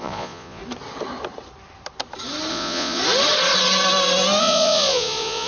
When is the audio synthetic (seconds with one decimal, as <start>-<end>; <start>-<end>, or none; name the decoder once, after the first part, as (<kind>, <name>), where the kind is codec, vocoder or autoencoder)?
0.0-0.6 (vocoder, Vocos); 2.5-3.0; 4.4-5.5